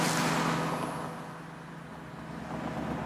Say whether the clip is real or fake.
real